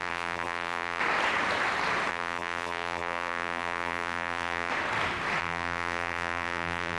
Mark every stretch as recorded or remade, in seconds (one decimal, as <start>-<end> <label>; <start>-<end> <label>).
0.0-1.0 remade; 1.0-2.1 recorded; 2.1-4.7 remade; 4.7-5.4 recorded; 5.4-7.0 remade